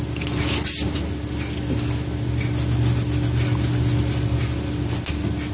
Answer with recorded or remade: recorded